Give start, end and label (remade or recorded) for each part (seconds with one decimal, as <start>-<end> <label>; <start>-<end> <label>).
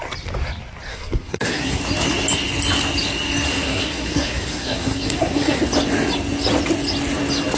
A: 0.0-0.9 recorded; 0.9-1.8 remade; 1.8-3.5 recorded; 3.5-5.6 remade; 5.6-7.6 recorded